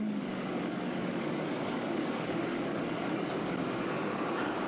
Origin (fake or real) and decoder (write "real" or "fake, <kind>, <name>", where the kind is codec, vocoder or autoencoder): fake, codec, DAC